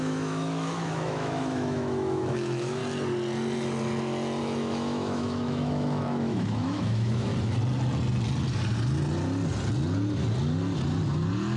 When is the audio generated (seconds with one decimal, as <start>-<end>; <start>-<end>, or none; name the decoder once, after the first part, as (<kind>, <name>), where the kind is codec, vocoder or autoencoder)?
0.0-2.8 (autoencoder, DAC-VAE); 4.4-7.3